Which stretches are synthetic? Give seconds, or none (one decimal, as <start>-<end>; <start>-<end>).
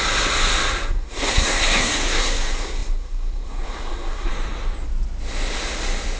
0.8-4.3